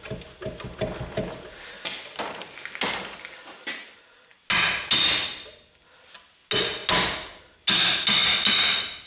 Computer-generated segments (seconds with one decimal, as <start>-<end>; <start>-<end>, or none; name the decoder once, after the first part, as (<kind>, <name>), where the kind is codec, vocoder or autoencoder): none